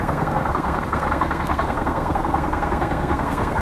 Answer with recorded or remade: remade